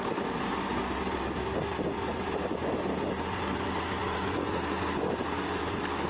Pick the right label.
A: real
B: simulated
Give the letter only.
A